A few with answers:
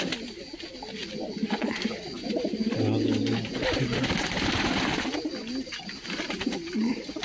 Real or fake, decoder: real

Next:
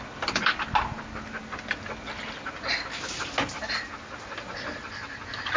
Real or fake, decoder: real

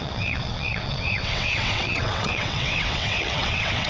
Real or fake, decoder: fake, vocoder, WaveNeXt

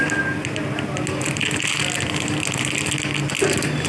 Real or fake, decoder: real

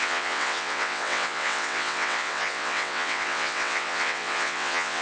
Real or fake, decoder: fake, vocoder, WaveNeXt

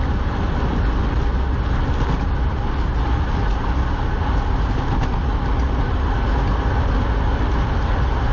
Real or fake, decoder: real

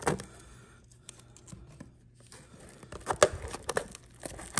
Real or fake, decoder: real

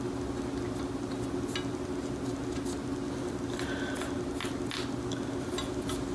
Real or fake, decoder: real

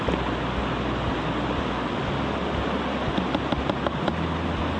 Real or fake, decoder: real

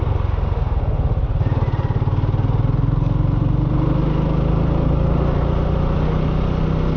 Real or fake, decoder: real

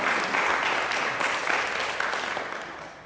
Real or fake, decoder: real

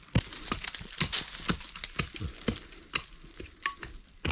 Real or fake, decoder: real